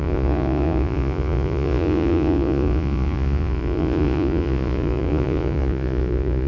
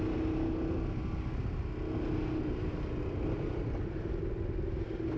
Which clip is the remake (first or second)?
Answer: first